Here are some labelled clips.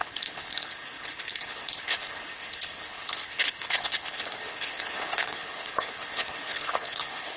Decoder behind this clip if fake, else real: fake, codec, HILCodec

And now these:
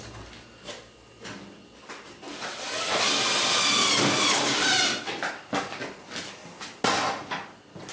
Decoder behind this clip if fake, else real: real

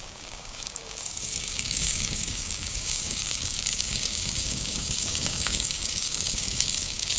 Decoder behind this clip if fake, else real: fake, codec, DAC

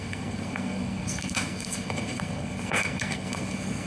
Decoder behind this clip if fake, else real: fake, codec, SNAC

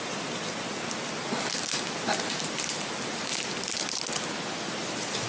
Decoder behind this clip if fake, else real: real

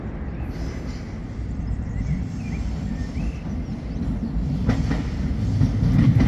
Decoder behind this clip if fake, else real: real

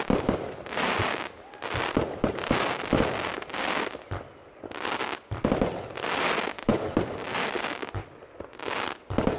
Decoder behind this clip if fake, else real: real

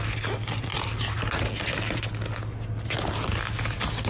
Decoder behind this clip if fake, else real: real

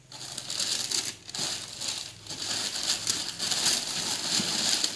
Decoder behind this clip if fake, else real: real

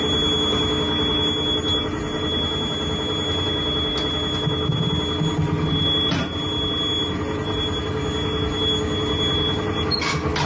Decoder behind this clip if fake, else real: real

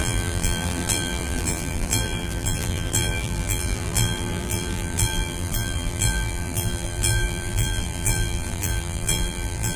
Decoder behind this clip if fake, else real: fake, vocoder, BigVGAN v2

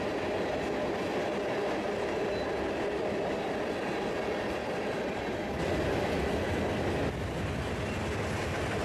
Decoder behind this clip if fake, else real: real